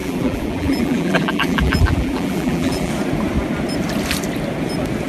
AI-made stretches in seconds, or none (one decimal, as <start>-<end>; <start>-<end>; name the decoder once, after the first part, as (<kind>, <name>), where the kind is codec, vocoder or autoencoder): 0.0-2.9 (vocoder, BigVGAN v2)